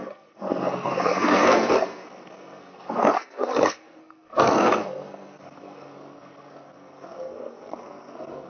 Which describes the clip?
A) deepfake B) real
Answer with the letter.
A